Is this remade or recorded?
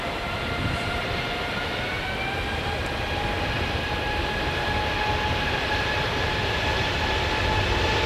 recorded